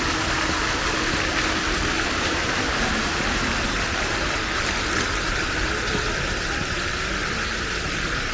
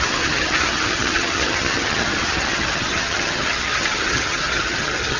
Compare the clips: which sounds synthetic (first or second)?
second